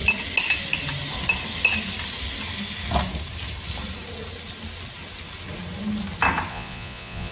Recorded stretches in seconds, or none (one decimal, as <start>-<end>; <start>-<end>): 0.0-6.5

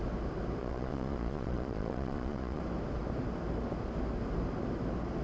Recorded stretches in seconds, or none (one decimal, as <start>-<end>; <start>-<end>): 0.0-0.6; 2.6-5.2

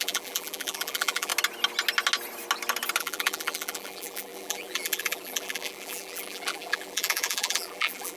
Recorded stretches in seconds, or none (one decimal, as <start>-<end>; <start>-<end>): 1.3-3.0

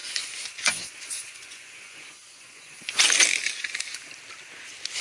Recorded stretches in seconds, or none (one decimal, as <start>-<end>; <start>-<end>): 3.0-5.0

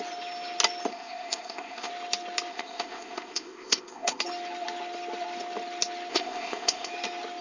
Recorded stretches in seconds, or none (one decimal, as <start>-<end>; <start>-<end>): 0.0-0.9; 1.9-2.5; 4.2-6.1; 6.9-7.4

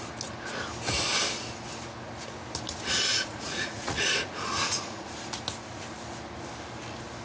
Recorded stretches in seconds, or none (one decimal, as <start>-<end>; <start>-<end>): 0.0-3.1; 5.1-7.2

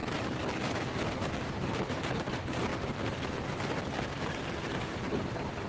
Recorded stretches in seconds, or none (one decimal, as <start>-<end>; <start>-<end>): 0.0-5.7

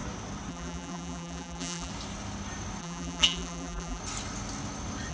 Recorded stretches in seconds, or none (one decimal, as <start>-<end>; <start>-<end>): 0.0-0.5; 1.9-2.8; 4.0-5.1